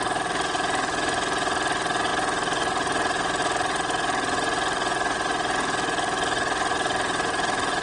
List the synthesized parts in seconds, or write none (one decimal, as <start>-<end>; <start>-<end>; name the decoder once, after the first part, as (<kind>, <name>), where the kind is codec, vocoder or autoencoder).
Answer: none